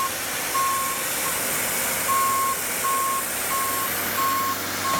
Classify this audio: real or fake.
real